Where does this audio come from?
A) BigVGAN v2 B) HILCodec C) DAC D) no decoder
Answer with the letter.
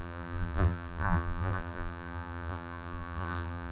A